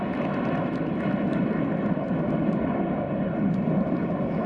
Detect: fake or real real